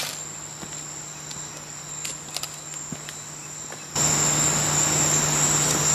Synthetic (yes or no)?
no